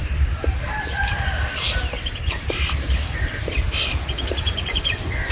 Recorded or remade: recorded